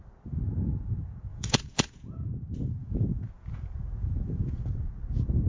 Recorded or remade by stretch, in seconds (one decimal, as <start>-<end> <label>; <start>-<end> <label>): 0.0-1.3 recorded; 1.3-2.3 remade; 2.3-2.8 recorded; 2.8-4.7 remade; 4.7-5.5 recorded